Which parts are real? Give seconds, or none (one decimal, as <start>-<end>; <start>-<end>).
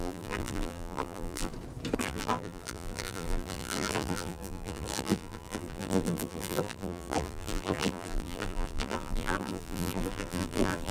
1.5-2.0